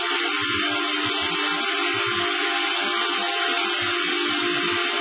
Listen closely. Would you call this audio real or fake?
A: real